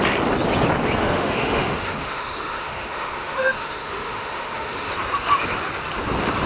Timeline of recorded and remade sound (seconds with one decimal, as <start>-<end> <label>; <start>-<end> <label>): 0.0-1.0 recorded; 1.0-4.9 remade; 4.9-6.5 recorded